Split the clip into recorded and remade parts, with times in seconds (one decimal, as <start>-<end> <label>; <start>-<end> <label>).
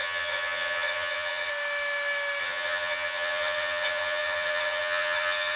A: 0.0-1.5 remade; 1.5-2.4 recorded; 2.4-5.6 remade